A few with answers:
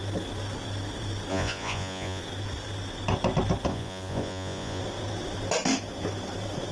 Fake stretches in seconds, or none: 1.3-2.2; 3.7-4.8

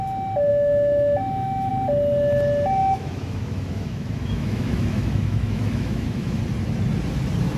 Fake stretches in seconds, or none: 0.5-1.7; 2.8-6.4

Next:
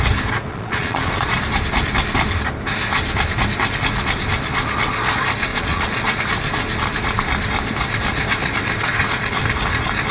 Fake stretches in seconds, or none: 0.5-1.4; 5.5-6.2

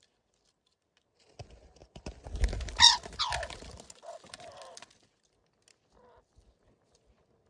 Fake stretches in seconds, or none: none

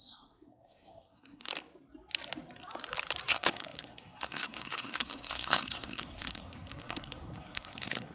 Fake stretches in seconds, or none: 0.0-1.5; 3.3-8.1